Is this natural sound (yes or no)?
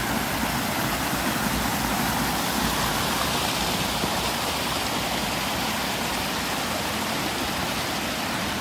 yes